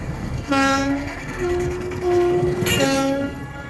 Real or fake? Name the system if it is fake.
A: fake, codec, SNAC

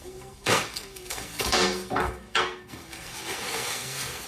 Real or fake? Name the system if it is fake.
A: fake, codec, SNAC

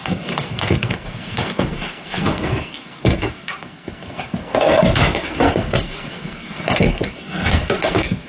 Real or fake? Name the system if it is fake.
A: fake, codec, SNAC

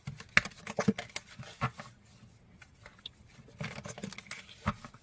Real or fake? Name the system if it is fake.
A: real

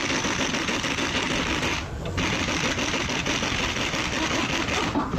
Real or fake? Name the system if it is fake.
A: real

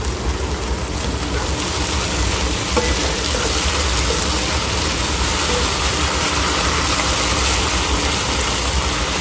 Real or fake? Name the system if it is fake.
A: real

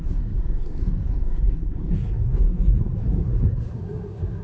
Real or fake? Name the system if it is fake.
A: fake, codec, SNAC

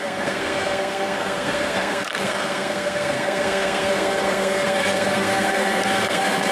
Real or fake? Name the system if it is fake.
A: fake, codec, SNAC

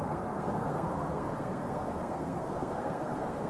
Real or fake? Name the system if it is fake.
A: fake, codec, SNAC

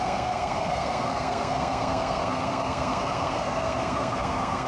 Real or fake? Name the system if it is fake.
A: fake, codec, SNAC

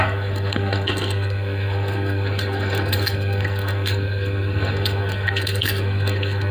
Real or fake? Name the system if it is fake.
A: fake, codec, SNAC